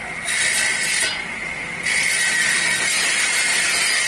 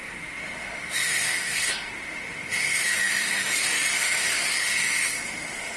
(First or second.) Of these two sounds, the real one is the first